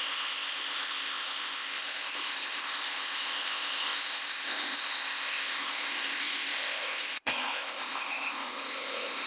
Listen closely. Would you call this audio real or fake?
fake